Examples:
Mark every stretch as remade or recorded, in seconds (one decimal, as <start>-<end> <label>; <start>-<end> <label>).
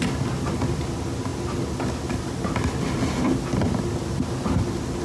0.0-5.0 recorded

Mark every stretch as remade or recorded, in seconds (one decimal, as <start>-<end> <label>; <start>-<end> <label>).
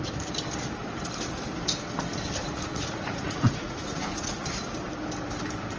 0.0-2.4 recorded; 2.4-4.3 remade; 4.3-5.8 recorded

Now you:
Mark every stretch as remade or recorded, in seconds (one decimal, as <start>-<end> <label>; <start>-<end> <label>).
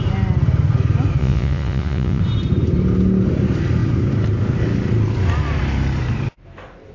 0.0-1.2 recorded; 1.2-2.2 remade; 2.2-6.9 recorded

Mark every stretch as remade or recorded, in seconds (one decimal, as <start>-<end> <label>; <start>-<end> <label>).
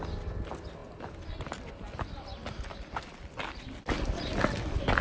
0.0-5.0 recorded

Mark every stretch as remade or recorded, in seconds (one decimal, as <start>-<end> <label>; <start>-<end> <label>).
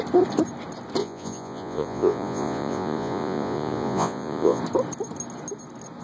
0.0-1.0 recorded; 1.0-4.6 remade; 4.6-6.0 recorded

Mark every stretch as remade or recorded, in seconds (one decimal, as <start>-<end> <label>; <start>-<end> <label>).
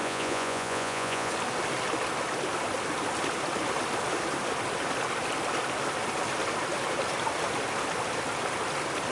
0.0-1.3 remade; 1.3-9.1 recorded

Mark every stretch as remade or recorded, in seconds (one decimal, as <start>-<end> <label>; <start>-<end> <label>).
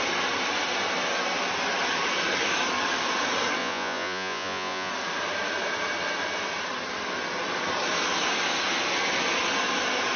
0.0-3.6 recorded; 3.6-4.9 remade; 4.9-10.2 recorded